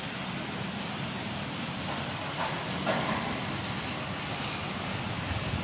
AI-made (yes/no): no